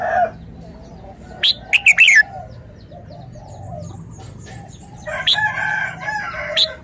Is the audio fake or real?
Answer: real